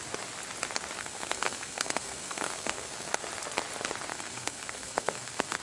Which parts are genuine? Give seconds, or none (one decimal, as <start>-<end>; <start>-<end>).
0.0-1.0; 3.1-4.1